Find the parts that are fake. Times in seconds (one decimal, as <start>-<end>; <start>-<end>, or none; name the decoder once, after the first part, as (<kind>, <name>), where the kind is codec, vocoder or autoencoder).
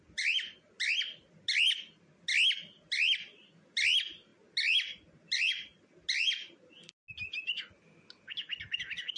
none